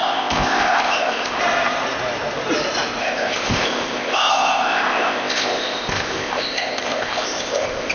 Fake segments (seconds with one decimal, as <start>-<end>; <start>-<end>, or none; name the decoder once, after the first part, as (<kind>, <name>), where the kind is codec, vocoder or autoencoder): 0.0-1.4 (codec, ZipCodec); 3.0-7.9